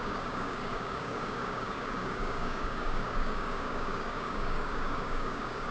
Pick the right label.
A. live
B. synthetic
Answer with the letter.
B